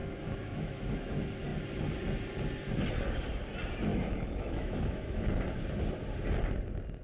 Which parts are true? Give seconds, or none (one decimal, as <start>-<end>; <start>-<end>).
1.1-3.9; 5.3-7.0